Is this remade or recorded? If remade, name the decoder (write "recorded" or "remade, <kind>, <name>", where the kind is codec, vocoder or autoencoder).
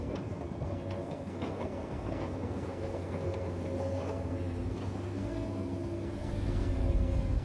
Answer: remade, codec, SNAC